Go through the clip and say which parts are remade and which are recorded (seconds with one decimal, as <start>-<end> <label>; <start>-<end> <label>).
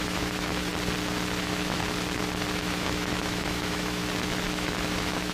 0.0-0.7 remade; 0.7-1.4 recorded; 1.4-1.8 remade; 1.8-2.5 recorded; 2.5-4.0 remade; 4.0-4.5 recorded; 4.5-5.3 remade